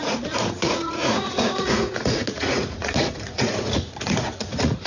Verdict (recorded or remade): remade